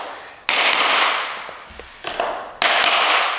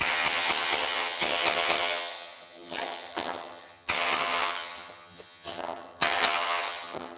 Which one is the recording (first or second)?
first